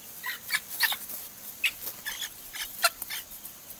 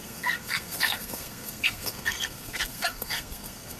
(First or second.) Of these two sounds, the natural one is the first